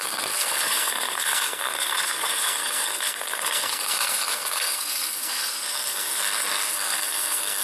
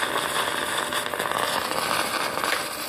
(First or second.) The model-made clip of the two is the first